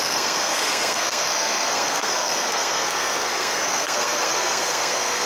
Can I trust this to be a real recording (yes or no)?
no